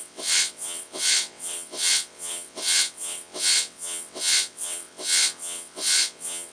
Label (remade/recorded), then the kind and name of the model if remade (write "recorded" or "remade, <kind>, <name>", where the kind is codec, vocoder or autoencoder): remade, vocoder, WaveNeXt